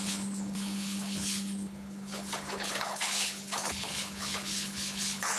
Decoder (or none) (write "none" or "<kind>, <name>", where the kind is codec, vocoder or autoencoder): codec, HILCodec